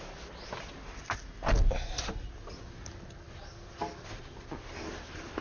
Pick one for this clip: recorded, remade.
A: recorded